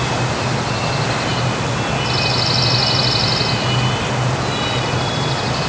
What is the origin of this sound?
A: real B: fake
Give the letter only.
A